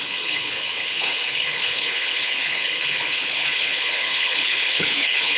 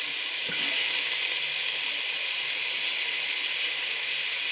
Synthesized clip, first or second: first